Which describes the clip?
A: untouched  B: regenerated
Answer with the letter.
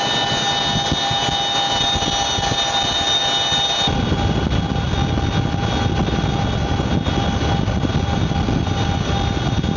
A